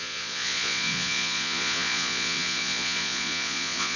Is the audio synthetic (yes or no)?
yes